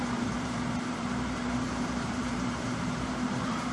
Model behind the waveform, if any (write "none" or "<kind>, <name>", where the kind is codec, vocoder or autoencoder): vocoder, BigVGAN v2